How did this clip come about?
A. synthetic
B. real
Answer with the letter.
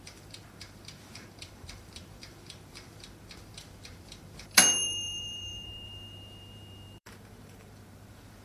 A